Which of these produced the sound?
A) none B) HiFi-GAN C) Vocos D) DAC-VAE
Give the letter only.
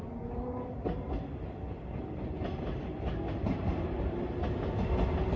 A